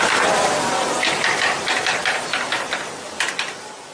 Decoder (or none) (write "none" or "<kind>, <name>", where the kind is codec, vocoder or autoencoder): none